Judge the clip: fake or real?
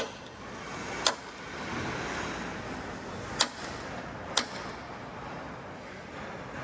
real